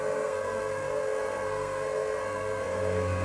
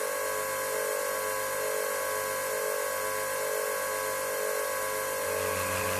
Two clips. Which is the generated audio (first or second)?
first